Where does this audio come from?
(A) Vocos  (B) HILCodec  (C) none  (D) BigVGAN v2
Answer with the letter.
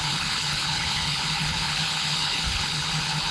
B